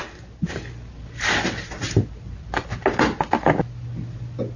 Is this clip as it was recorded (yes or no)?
yes